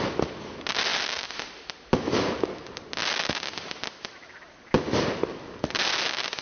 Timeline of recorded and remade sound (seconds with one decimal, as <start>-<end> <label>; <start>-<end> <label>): 0.0-6.4 recorded